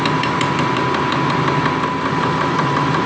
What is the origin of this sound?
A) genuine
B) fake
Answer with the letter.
B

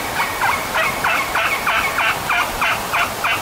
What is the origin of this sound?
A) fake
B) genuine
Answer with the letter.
B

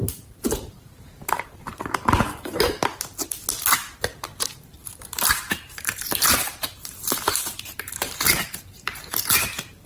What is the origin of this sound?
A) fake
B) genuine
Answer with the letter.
A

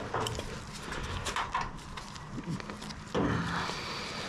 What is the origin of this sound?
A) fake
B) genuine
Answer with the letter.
B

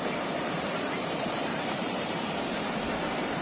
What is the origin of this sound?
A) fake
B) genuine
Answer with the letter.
A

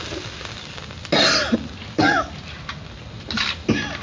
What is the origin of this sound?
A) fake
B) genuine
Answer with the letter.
B